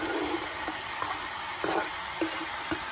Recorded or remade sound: recorded